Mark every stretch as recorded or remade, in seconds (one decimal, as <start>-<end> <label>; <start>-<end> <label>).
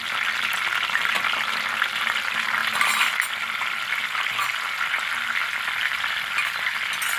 0.0-7.2 recorded